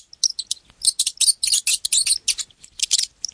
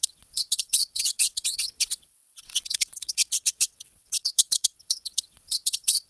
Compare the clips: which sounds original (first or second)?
first